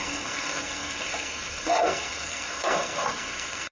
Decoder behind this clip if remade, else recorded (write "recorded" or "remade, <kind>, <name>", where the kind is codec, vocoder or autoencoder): remade, codec, SNAC